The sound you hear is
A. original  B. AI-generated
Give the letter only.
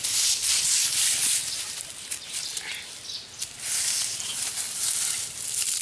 A